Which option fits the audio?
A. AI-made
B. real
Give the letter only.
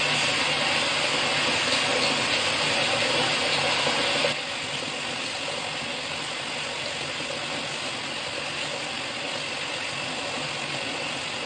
B